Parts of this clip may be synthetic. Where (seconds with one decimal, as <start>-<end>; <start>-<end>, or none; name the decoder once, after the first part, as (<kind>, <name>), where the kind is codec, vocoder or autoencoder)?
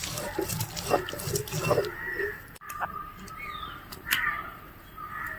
none